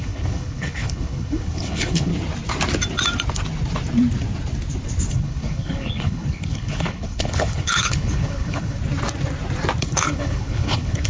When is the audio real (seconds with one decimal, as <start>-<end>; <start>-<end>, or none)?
2.1-5.1; 8.8-9.8